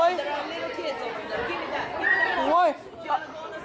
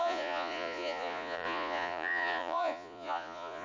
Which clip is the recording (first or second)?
first